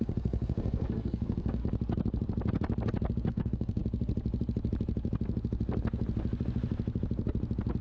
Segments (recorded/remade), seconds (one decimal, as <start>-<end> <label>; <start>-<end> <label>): 0.0-1.6 remade; 1.6-3.3 recorded; 3.3-3.8 remade; 3.8-7.8 recorded